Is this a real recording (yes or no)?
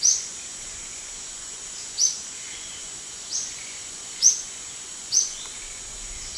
no